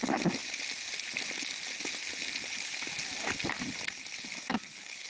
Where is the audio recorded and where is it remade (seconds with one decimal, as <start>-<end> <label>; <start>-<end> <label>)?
0.0-4.3 recorded; 4.3-5.1 remade